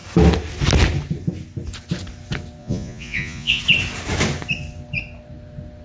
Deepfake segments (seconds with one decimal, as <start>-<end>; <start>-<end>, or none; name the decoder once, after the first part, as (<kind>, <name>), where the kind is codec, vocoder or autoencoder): 2.6-3.6 (vocoder, Vocos)